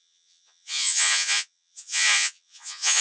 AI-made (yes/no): yes